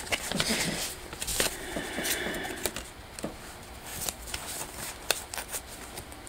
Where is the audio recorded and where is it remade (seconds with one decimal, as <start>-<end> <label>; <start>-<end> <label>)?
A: 0.0-3.9 remade; 3.9-5.6 recorded; 5.6-6.3 remade